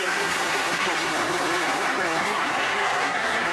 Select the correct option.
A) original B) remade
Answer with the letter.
B